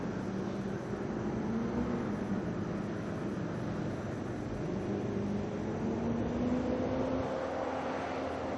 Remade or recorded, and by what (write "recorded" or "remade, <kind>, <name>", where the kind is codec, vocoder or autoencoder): recorded